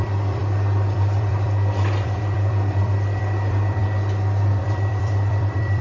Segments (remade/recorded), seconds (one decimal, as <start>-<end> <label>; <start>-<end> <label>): 0.0-3.8 remade; 3.8-4.6 recorded; 4.6-5.8 remade